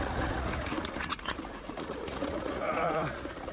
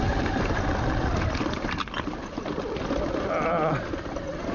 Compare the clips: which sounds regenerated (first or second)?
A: first